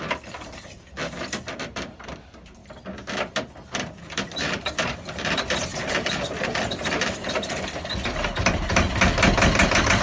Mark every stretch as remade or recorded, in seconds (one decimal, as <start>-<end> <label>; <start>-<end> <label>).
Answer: 0.0-2.6 remade; 2.6-4.1 recorded; 4.1-10.0 remade